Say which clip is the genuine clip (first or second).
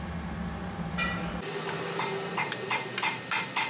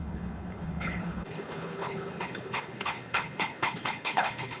first